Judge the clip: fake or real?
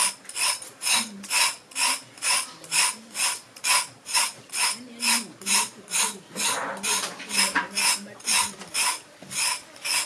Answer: real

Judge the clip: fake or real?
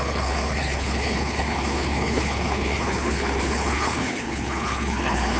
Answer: fake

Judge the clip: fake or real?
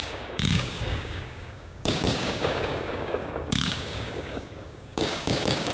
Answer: fake